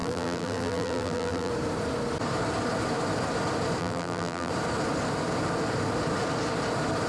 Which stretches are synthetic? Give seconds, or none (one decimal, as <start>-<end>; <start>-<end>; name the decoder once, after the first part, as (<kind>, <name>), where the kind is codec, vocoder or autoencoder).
0.0-1.5 (vocoder, BigVGAN v2); 3.8-4.5